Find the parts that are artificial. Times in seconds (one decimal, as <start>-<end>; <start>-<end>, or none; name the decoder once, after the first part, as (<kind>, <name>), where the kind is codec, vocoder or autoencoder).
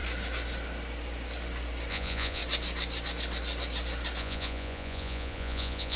1.9-2.4 (vocoder, Vocos); 4.2-6.0